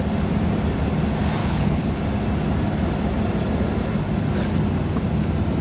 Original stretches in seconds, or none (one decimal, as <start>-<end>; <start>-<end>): 0.0-1.4; 2.0-5.6